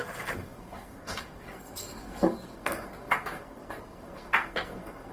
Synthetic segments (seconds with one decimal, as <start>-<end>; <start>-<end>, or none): 0.0-5.1